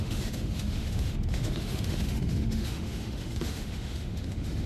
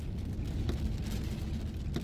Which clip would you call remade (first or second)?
first